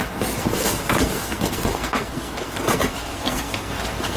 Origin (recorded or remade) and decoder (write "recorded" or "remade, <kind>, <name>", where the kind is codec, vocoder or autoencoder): remade, codec, SNAC